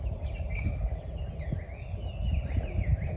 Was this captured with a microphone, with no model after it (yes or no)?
yes